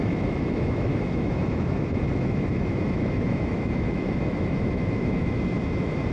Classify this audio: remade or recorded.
remade